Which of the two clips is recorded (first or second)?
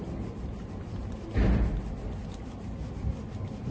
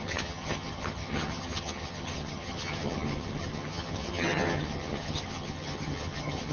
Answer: first